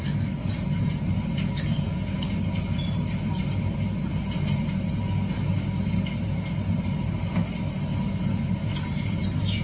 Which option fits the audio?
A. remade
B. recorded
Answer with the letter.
B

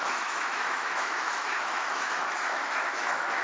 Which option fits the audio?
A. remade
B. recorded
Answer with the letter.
A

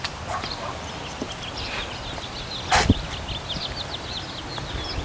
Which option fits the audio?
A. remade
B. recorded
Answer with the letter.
B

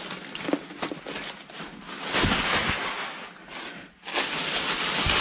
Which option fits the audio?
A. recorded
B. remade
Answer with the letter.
A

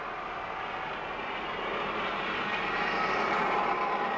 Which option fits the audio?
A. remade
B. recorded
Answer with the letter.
B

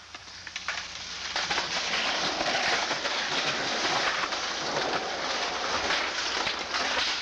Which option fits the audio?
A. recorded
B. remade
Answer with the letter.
A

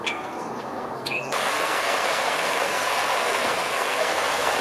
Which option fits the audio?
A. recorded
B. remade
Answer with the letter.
B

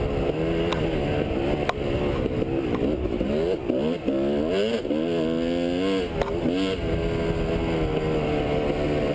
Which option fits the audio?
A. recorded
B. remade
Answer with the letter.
A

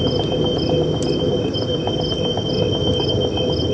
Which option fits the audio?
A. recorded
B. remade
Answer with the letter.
A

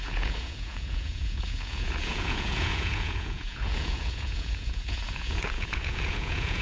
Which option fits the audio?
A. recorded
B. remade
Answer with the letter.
B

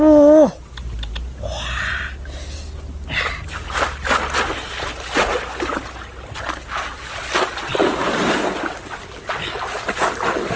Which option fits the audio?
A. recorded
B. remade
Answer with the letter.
A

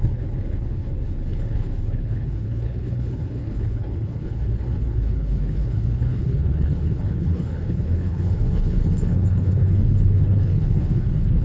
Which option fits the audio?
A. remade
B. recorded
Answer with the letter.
A